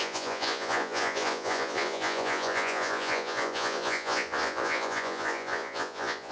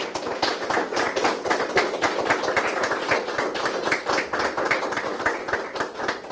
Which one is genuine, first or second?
second